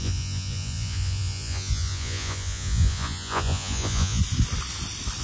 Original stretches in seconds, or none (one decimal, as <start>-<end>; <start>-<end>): 4.2-5.2